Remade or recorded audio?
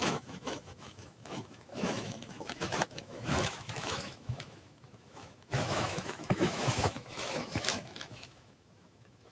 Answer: remade